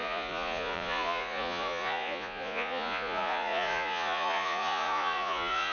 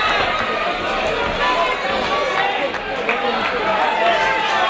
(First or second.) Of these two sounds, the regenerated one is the first